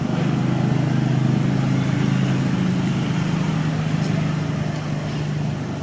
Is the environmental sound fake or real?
real